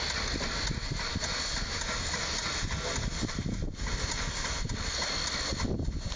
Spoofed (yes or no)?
no